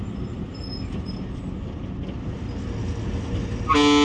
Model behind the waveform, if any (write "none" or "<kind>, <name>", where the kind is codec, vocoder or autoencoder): none